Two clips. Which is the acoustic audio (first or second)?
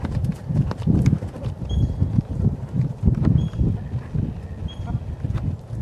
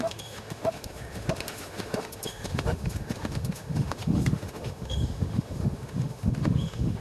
first